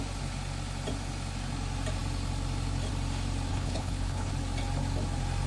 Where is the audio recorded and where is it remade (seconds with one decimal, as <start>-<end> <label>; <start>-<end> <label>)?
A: 0.0-3.5 recorded; 3.5-4.3 remade; 4.3-5.5 recorded